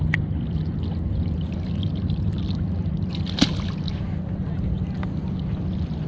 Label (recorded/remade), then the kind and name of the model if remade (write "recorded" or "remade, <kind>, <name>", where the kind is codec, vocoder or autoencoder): recorded